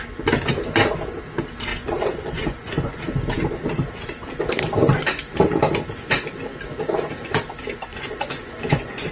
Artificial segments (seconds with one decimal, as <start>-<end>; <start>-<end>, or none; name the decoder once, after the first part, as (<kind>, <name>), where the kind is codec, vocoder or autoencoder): 1.7-3.0 (vocoder, Vocos); 7.9-9.1